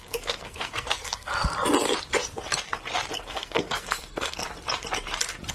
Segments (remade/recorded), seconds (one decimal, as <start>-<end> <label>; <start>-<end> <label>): 0.0-1.3 remade; 1.3-3.2 recorded; 3.2-4.4 remade; 4.4-5.5 recorded